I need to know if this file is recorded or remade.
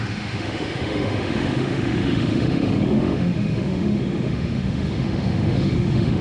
remade